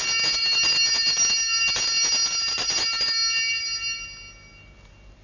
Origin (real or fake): real